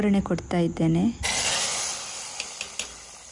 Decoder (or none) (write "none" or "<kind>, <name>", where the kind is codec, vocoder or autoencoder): none